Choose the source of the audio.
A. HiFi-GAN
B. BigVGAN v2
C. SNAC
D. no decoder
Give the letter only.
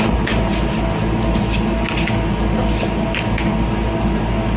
D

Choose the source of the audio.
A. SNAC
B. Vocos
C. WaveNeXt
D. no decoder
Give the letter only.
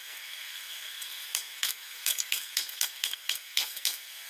A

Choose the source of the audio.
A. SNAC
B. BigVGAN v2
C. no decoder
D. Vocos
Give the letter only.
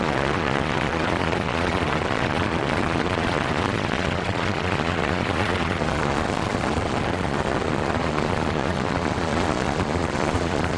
D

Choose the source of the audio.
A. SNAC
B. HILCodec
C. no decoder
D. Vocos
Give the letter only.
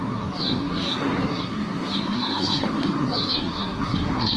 A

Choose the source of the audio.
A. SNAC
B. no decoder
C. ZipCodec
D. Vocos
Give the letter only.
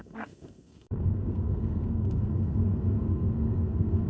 A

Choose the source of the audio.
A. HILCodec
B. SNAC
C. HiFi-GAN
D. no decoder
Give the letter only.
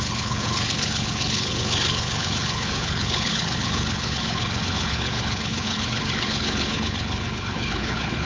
A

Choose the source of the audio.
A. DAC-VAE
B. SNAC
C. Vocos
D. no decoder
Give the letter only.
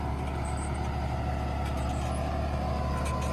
D